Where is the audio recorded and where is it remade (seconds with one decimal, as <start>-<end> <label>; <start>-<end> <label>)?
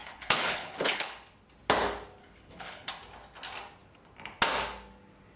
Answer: 0.0-1.1 remade; 1.1-2.2 recorded; 2.2-2.9 remade; 2.9-5.4 recorded